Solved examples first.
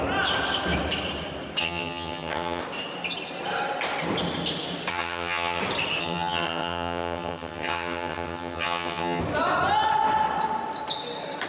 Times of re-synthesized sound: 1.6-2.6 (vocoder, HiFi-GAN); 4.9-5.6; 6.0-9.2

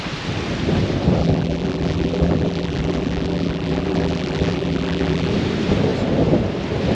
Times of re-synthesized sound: 1.2-5.3 (vocoder, BigVGAN v2)